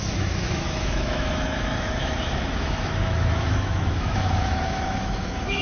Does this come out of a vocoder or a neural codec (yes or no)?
yes